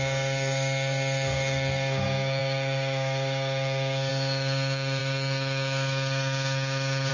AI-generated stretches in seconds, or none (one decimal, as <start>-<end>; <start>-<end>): 0.0-7.1